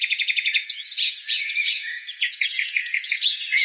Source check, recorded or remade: remade